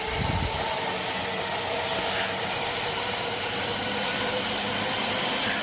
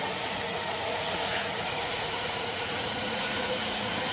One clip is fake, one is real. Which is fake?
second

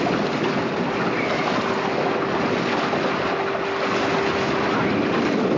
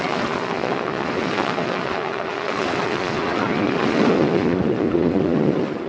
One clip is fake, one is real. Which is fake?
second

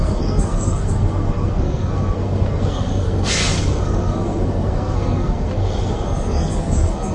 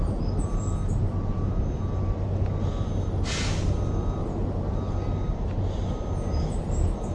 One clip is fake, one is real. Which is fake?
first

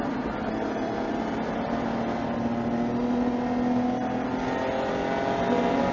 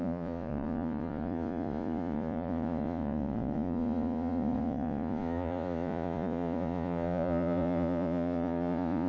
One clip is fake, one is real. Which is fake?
second